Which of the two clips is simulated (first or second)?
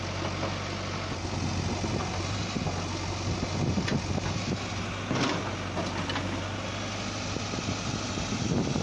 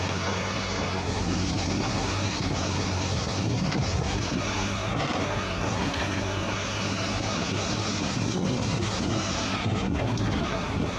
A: second